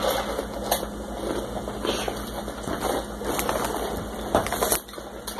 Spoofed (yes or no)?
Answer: no